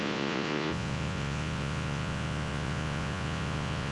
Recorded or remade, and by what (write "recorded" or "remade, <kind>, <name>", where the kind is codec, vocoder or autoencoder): remade, vocoder, Vocos